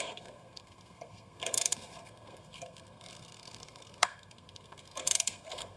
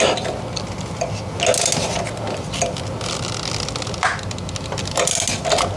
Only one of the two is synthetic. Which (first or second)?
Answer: first